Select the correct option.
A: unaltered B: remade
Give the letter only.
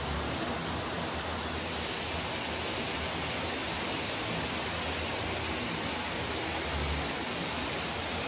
A